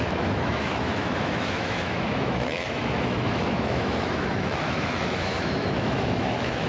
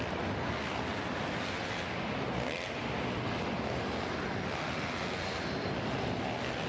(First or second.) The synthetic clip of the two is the first